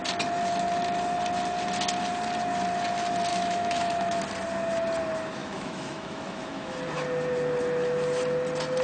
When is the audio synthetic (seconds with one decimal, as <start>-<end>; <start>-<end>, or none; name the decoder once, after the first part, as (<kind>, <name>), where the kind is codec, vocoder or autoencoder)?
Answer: 3.3-4.2 (autoencoder, DAC-VAE); 5.4-6.8

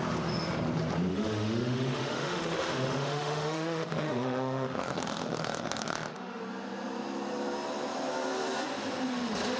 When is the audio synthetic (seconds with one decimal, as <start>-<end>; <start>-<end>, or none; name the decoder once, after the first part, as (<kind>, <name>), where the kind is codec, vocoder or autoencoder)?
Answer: 1.1-6.4 (autoencoder, DAC-VAE)

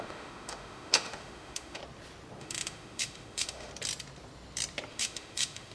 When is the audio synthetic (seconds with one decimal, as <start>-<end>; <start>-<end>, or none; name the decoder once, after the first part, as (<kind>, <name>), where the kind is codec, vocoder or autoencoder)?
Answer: 0.0-1.8 (autoencoder, DAC-VAE); 2.4-3.7; 4.9-5.7

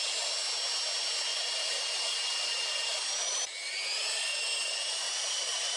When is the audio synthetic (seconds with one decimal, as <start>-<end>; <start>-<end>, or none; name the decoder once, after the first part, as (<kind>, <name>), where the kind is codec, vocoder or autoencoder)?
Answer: none